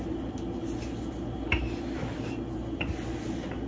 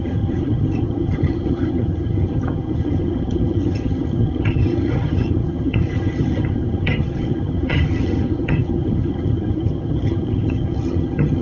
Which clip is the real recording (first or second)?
first